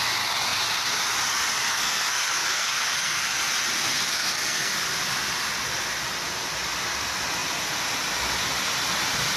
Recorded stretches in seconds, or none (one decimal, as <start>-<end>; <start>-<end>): 0.0-1.7; 3.5-4.1; 4.7-9.4